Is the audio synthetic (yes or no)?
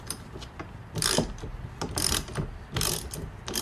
no